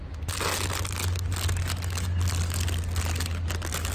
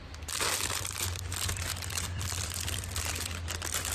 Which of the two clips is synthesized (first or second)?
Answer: second